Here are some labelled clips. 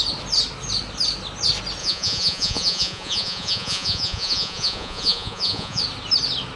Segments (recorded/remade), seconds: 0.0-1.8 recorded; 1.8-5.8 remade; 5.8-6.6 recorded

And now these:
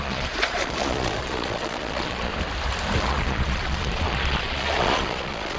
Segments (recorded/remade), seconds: 0.0-2.3 remade; 2.3-3.0 recorded; 3.0-5.6 remade

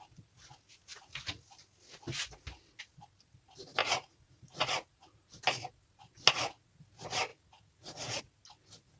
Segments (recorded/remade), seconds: 0.0-3.8 recorded; 3.8-5.3 remade; 5.3-7.3 recorded; 7.3-8.2 remade; 8.2-9.0 recorded

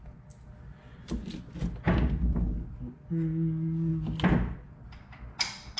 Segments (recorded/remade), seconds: 0.0-5.8 recorded

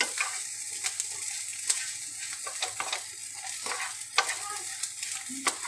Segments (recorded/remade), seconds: 0.0-1.5 recorded; 1.5-2.4 remade; 2.4-5.7 recorded

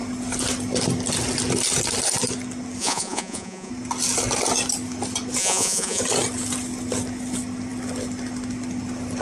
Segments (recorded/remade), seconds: 0.0-2.8 recorded; 2.8-3.7 remade; 3.7-5.4 recorded; 5.4-6.0 remade; 6.0-9.2 recorded